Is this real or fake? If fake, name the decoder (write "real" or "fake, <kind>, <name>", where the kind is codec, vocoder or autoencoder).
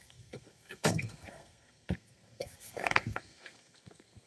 fake, codec, SNAC